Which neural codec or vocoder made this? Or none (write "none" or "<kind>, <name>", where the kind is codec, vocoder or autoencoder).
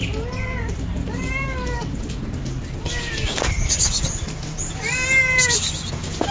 none